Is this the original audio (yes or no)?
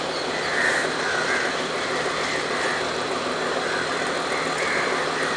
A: yes